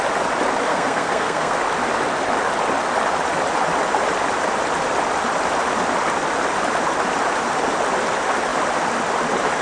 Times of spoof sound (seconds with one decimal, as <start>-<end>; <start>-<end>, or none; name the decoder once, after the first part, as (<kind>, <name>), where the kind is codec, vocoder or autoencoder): 0.7-1.6 (codec, SNAC)